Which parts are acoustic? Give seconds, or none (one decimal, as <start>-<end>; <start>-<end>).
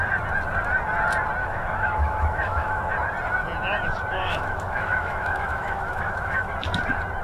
0.0-1.4; 2.8-4.1; 6.5-7.2